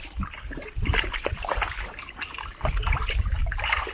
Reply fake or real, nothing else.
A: real